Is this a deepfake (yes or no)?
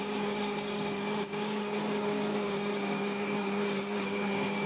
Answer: yes